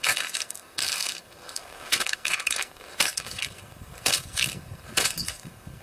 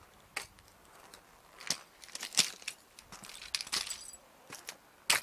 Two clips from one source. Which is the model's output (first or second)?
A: first